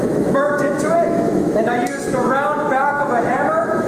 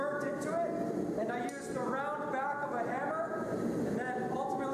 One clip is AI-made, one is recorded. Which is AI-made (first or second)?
first